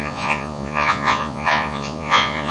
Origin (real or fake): fake